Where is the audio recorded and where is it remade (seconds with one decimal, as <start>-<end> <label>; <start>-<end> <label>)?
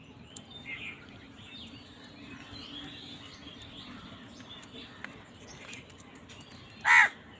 0.0-7.4 recorded